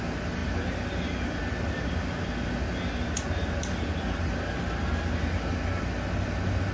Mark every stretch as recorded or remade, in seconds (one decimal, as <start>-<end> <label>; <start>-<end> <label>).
0.0-6.7 recorded